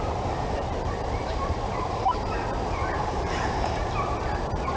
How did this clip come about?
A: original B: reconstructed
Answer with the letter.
B